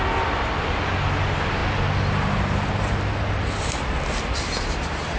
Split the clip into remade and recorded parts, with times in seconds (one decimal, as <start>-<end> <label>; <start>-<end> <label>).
0.0-5.2 recorded